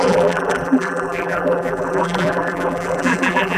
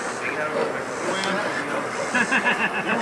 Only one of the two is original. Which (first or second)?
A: second